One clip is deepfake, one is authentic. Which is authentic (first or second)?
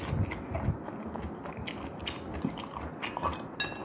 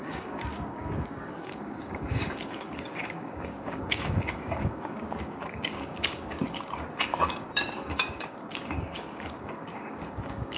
first